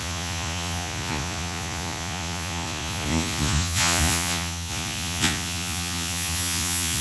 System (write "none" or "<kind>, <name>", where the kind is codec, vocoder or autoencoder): vocoder, Vocos